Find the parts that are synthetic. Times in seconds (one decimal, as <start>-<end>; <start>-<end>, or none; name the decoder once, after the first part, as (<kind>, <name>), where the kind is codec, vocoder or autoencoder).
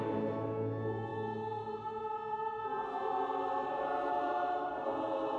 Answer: none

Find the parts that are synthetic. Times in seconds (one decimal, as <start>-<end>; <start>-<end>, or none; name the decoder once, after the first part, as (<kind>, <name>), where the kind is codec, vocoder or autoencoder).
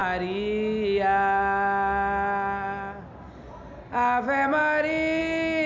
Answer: none